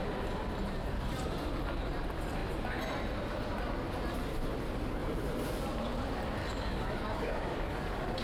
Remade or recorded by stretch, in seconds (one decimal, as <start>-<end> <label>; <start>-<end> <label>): 0.0-6.4 recorded; 6.4-8.2 remade